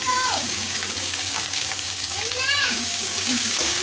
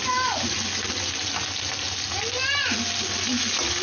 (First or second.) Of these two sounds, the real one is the second